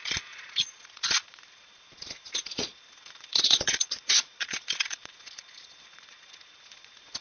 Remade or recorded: remade